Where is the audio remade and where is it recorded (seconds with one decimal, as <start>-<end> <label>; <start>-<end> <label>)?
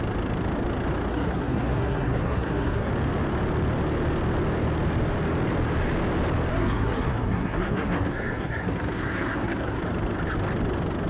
0.0-1.1 recorded; 1.1-2.9 remade; 2.9-6.5 recorded; 6.5-9.8 remade; 9.8-11.1 recorded